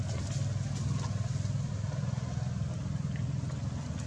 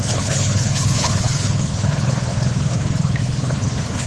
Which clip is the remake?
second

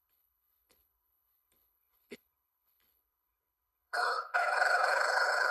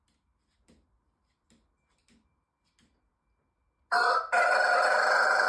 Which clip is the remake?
first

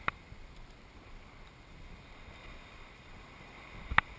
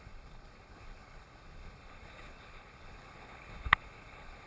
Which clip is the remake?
second